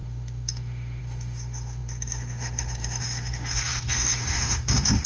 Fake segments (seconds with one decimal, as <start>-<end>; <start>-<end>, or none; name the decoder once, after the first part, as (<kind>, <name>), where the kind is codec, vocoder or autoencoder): 0.0-5.1 (autoencoder, DAC-VAE)